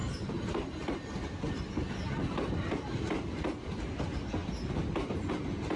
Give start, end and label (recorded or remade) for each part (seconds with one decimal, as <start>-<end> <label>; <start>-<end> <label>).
0.0-5.8 recorded